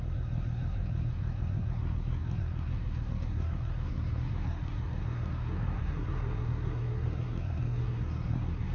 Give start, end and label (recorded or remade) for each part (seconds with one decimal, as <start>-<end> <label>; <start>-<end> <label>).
0.0-8.7 remade